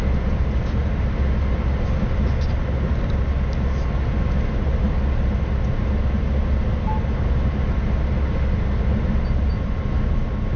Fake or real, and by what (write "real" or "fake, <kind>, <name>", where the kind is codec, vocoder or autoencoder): real